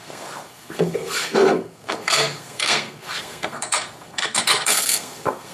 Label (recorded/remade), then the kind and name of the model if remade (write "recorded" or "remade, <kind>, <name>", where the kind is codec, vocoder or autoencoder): remade, codec, SNAC